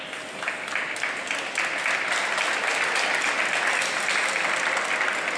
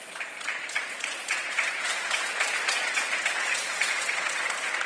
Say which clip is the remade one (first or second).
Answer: second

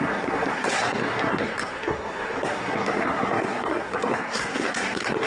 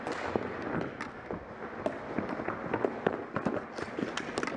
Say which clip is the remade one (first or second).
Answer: first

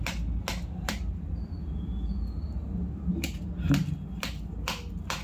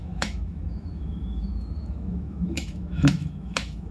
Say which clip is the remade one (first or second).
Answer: second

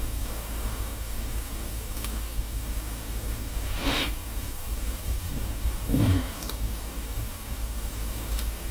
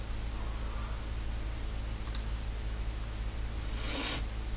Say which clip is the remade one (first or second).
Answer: first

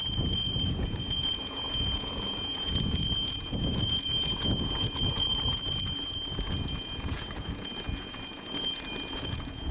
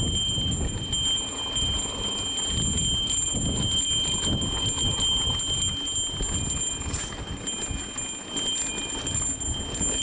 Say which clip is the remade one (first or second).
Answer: first